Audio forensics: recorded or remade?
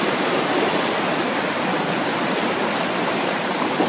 recorded